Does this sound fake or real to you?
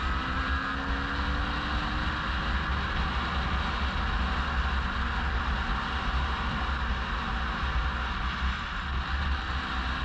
real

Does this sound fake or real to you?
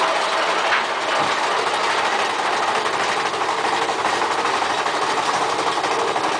real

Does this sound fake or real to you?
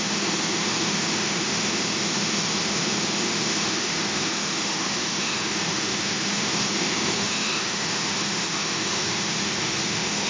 fake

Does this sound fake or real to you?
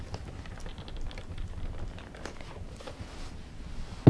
real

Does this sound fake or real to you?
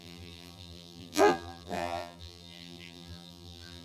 fake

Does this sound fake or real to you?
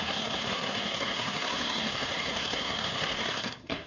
fake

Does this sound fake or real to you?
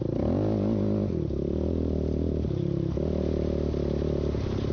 real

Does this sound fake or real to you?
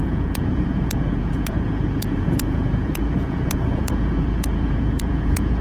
fake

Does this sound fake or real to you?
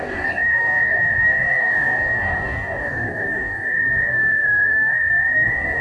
fake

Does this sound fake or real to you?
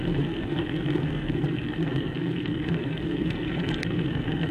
fake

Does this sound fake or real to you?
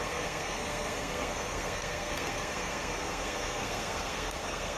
fake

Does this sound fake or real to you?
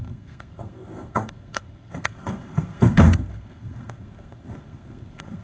fake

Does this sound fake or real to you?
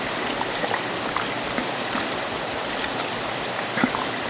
real